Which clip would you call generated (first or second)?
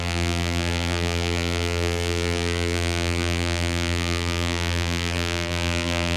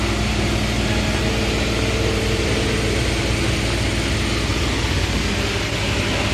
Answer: first